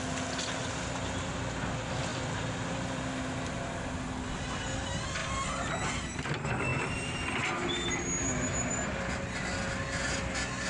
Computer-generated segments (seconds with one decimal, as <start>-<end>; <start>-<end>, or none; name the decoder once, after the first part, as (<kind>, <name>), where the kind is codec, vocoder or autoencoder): 2.1-3.0 (vocoder, BigVGAN v2)